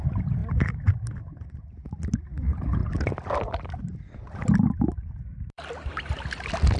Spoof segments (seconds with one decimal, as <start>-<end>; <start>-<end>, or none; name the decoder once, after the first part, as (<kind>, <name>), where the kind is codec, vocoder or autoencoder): 0.0-6.8 (vocoder, BigVGAN v2)